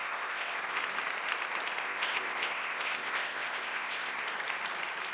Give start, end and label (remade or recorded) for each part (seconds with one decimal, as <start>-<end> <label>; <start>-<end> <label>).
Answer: 0.0-0.8 remade; 0.8-1.8 recorded; 1.8-4.2 remade; 4.2-5.1 recorded